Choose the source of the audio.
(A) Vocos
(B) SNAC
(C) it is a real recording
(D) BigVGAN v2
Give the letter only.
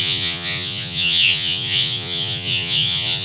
A